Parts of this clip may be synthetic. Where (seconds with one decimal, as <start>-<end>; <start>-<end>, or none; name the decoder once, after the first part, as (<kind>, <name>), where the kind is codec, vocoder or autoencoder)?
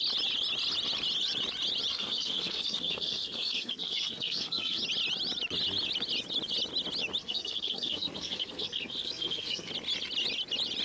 1.9-4.8 (codec, SNAC); 7.2-9.7